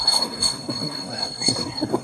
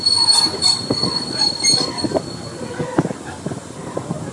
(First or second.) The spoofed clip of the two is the first